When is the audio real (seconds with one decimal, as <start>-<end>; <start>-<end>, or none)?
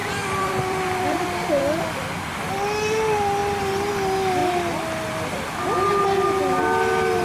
1.6-7.2